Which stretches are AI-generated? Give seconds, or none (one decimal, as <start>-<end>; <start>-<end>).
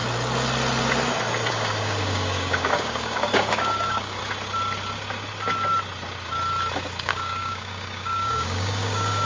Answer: 1.5-4.2; 7.0-9.3